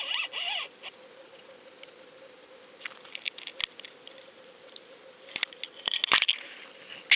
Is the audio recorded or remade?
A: recorded